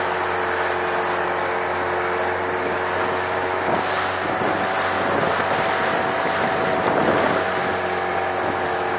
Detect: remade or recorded recorded